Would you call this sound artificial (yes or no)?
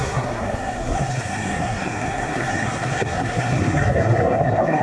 yes